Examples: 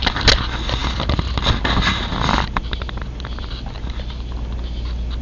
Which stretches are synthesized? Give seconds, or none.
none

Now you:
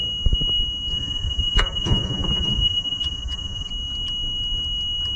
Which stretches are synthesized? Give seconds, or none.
0.9-3.7

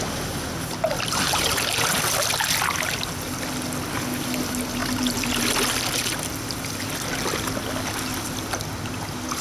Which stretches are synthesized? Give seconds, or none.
none

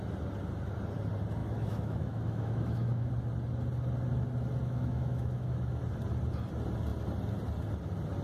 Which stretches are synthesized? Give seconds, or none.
1.4-3.1; 4.6-5.8

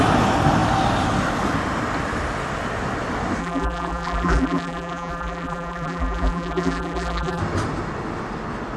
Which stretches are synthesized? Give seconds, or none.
3.4-7.4

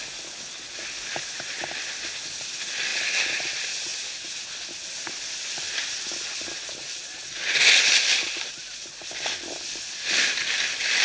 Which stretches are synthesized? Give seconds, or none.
none